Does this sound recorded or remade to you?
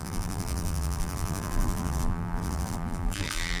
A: remade